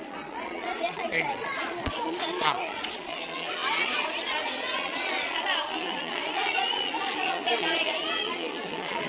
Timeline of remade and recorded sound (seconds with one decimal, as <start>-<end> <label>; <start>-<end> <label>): 0.0-9.1 remade